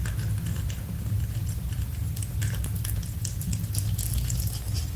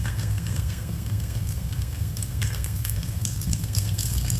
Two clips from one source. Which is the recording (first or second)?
first